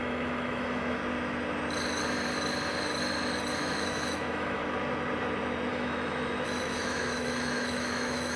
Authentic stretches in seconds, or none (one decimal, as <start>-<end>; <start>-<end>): 1.0-3.6; 4.6-5.7